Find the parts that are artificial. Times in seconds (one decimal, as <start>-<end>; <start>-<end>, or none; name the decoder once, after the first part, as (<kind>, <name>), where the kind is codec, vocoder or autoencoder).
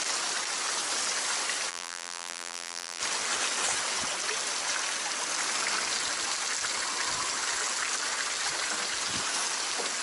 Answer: 1.7-3.0 (vocoder, BigVGAN v2)